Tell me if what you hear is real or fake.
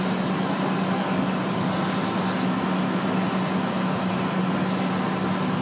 real